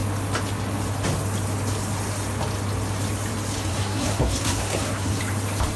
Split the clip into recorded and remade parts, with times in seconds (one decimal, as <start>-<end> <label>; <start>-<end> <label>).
0.0-3.7 recorded; 3.7-5.2 remade; 5.2-5.8 recorded